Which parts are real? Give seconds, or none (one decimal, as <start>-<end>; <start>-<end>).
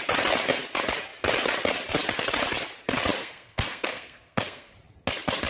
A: 0.0-3.2; 4.7-5.5